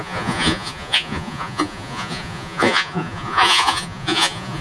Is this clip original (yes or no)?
no